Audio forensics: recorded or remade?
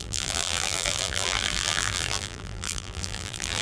remade